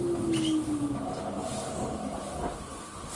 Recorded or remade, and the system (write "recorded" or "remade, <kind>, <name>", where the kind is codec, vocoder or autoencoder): recorded